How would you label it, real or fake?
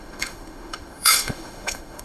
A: fake